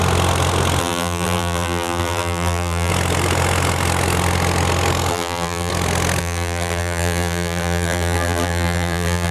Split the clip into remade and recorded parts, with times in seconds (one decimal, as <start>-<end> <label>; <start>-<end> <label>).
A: 0.0-0.8 recorded; 0.8-2.9 remade; 2.9-5.1 recorded; 5.1-5.7 remade; 5.7-6.2 recorded; 6.2-9.3 remade